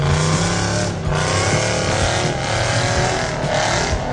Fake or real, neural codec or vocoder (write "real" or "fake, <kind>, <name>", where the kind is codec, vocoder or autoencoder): real